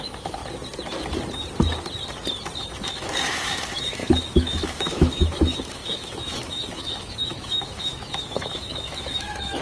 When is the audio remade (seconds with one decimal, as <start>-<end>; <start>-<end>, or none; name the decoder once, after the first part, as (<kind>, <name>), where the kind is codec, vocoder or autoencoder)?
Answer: 0.0-0.4 (autoencoder, DAC-VAE); 2.6-9.6